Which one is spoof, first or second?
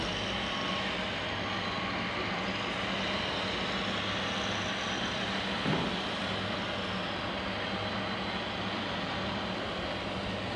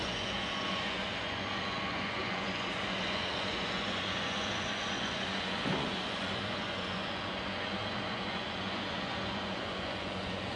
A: second